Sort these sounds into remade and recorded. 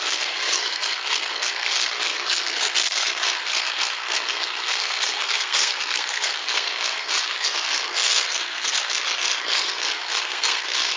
remade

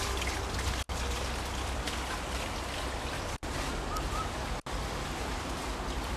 recorded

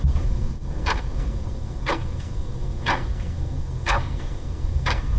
remade